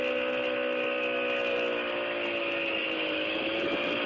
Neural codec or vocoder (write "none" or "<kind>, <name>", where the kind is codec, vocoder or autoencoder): none